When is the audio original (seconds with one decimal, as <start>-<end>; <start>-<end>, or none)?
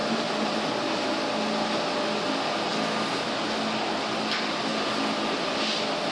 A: 0.0-6.1